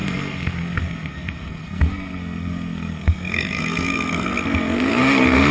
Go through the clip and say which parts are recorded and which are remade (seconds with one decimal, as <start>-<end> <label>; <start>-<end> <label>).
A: 0.0-5.5 remade